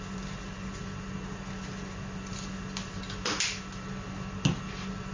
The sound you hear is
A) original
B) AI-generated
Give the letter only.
A